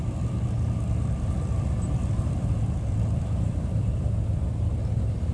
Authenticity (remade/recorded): recorded